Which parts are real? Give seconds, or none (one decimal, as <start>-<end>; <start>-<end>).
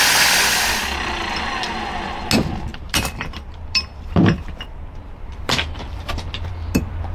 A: 0.0-2.7; 6.5-7.1